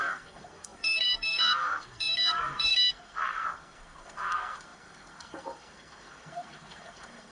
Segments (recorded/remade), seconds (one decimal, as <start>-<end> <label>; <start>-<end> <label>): 0.0-7.3 remade

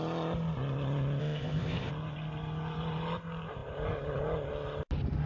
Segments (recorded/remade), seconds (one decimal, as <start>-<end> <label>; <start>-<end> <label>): 0.0-1.2 recorded; 1.2-1.9 remade; 1.9-5.3 recorded

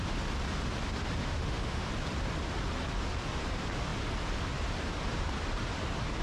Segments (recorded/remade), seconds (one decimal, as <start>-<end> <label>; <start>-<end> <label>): 0.0-1.2 recorded; 1.2-1.9 remade; 1.9-6.2 recorded

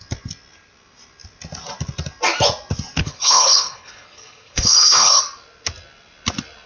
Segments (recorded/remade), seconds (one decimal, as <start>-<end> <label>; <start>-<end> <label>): 0.0-3.0 recorded; 3.0-5.2 remade; 5.2-6.7 recorded

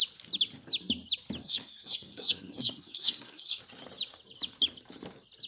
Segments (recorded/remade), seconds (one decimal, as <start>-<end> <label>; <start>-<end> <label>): 0.0-1.4 recorded; 1.4-3.6 remade; 3.6-5.5 recorded